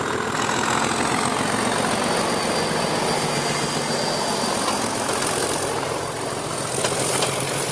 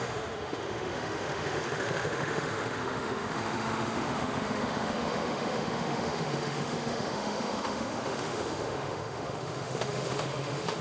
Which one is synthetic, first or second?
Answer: second